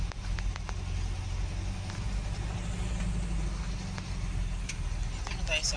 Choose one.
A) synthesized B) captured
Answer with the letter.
B